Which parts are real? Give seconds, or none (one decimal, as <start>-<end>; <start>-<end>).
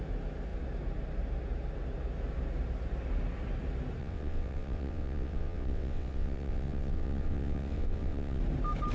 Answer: 0.0-4.0; 8.4-8.9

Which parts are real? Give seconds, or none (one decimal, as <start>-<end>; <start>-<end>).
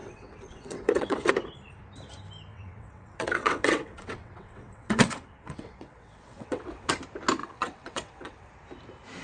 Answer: 1.3-2.5; 6.9-7.4; 8.5-9.2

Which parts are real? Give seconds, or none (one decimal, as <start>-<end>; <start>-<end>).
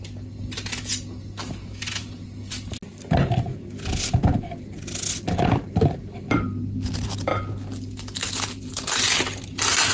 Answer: 0.0-9.9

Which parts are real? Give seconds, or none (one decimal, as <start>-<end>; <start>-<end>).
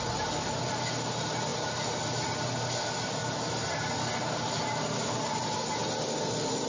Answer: 0.0-6.7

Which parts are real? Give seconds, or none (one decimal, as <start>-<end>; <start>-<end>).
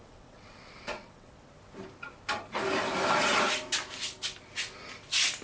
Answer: 1.3-5.4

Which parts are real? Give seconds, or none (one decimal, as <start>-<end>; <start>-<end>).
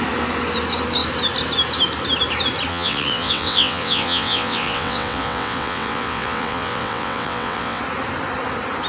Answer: 0.0-2.7; 7.8-8.9